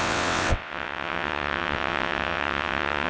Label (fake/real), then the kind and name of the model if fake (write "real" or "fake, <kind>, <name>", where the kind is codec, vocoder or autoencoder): fake, vocoder, WaveNeXt